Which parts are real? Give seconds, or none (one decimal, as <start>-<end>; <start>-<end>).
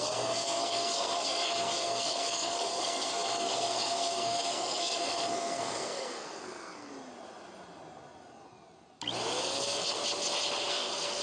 6.9-9.4; 10.0-10.7